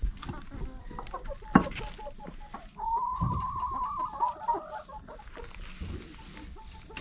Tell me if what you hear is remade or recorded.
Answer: recorded